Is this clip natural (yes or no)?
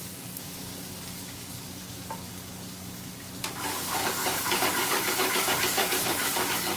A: no